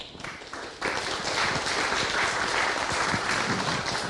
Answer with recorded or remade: recorded